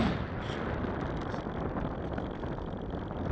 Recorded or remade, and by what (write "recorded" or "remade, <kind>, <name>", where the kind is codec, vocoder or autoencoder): recorded